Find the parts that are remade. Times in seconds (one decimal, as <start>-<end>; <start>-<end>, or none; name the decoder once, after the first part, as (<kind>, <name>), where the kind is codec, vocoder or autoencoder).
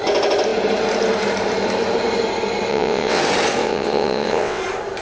2.7-3.2 (vocoder, WaveNeXt); 3.6-4.6